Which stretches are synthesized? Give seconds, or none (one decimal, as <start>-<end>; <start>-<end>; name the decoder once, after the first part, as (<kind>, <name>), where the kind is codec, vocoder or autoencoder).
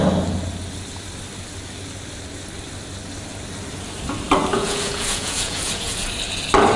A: 4.5-6.0 (vocoder, Vocos)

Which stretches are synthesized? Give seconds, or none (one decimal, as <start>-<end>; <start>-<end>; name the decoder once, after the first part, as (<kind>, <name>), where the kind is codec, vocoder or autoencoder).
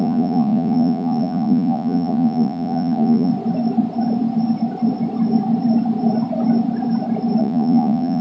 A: 0.0-3.3 (vocoder, Vocos); 7.4-8.2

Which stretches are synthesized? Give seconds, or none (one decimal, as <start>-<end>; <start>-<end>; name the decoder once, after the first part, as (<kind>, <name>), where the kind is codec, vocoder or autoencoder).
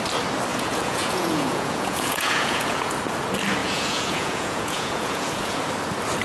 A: 0.5-2.9 (vocoder, Vocos); 3.6-5.6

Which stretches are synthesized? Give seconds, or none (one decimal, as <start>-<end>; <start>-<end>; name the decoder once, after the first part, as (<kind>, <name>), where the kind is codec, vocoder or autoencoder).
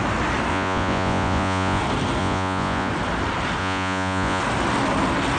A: 0.5-1.8 (vocoder, Vocos); 2.2-2.9; 3.6-4.4